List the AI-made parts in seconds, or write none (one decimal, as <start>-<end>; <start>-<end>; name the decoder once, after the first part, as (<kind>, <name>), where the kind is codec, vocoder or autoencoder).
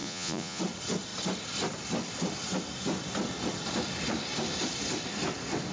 0.0-0.6 (vocoder, Vocos)